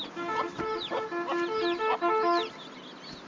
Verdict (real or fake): real